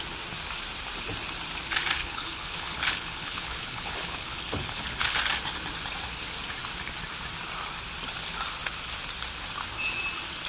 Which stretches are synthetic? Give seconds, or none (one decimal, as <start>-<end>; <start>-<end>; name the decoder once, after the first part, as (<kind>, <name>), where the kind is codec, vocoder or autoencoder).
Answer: 2.0-5.2 (codec, HILCodec)